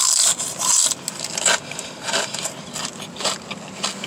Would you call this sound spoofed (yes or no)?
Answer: no